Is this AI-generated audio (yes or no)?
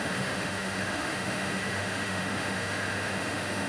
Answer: yes